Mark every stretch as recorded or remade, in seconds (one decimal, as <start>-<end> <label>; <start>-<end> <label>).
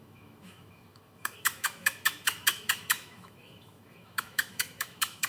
0.0-5.3 remade